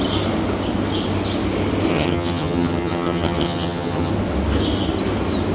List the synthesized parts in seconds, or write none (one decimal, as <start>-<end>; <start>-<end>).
1.9-4.1